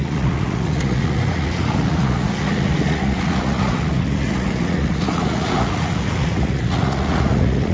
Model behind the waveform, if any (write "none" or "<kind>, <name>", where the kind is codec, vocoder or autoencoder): vocoder, Vocos